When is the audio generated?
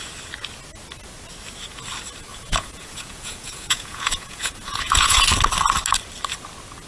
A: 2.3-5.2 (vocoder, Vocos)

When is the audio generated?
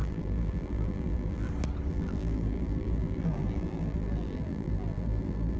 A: 0.0-1.5 (vocoder, BigVGAN v2); 1.9-5.6